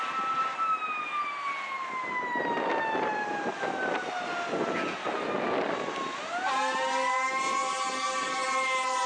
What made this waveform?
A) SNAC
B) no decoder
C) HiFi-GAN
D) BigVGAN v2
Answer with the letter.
B